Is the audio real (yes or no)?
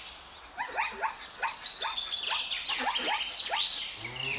yes